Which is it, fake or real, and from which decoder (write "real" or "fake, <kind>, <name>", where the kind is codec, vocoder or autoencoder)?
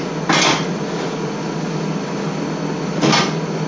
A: real